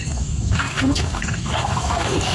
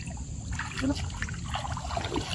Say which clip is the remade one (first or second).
first